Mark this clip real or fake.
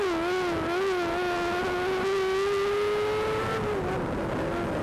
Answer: real